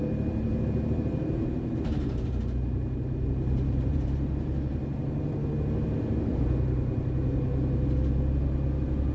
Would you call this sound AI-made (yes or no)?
yes